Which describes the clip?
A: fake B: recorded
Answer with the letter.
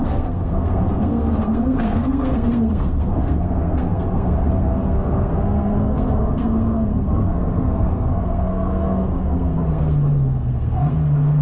A